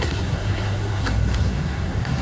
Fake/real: fake